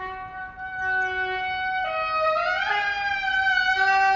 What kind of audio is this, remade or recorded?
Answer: recorded